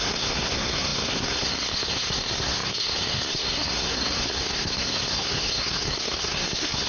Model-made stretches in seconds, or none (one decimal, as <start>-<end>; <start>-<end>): 0.0-6.9